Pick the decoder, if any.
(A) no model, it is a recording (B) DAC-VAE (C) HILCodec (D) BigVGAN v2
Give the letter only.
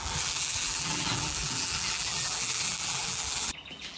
D